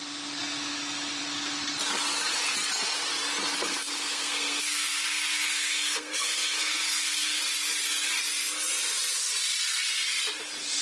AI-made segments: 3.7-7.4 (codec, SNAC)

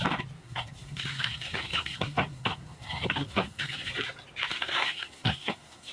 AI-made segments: 0.4-3.9 (codec, SNAC); 4.5-5.9

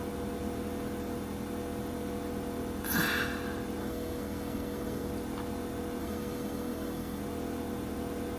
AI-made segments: 3.8-5.1 (codec, SNAC); 6.0-7.2